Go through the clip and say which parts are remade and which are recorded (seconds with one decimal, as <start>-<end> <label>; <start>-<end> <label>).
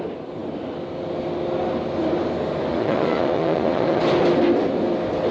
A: 0.0-2.7 recorded; 2.7-4.0 remade; 4.0-5.3 recorded